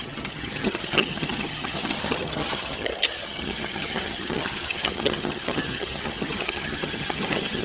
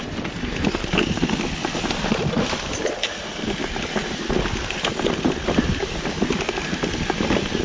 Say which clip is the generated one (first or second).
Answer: first